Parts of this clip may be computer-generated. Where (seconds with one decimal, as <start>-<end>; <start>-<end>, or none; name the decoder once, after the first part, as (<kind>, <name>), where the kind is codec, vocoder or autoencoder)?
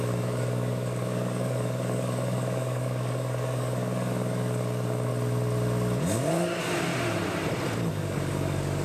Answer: 0.0-5.1 (codec, DAC); 7.9-8.8